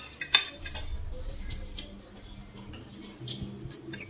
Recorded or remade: recorded